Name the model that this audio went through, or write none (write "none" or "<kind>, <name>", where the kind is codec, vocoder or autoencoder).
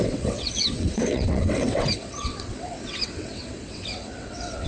vocoder, WaveNeXt